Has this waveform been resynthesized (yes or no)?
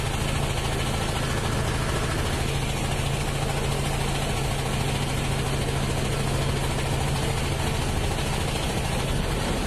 no